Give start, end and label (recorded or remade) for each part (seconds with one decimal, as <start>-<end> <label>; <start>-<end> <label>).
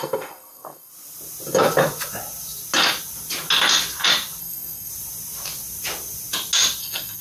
0.0-0.9 remade; 0.9-4.4 recorded; 4.4-4.9 remade; 4.9-6.8 recorded; 6.8-7.2 remade